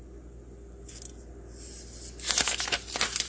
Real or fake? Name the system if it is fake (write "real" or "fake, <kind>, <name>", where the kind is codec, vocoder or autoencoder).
real